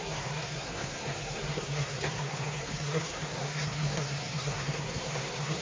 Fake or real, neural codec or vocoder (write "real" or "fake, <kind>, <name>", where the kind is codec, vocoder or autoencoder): fake, codec, SNAC